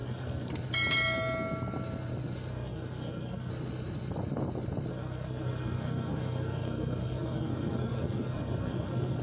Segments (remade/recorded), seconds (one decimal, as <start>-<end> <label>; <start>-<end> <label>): 0.0-0.5 remade; 0.5-2.5 recorded; 2.5-3.5 remade; 3.5-4.9 recorded; 4.9-9.2 remade